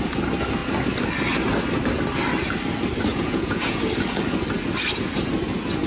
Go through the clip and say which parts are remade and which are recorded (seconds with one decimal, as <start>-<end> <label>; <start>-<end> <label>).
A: 0.0-3.1 recorded; 3.1-3.8 remade; 3.8-5.9 recorded